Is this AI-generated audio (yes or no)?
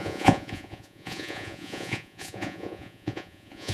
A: yes